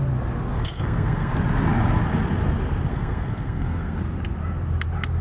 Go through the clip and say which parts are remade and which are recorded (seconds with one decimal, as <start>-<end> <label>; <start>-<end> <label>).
0.0-0.5 recorded; 0.5-1.3 remade; 1.3-2.9 recorded; 2.9-4.0 remade; 4.0-5.2 recorded